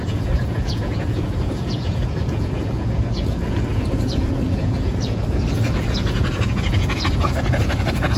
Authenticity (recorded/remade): remade